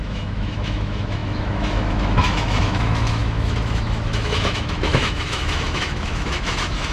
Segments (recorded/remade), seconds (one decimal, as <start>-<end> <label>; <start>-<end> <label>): 0.0-6.9 remade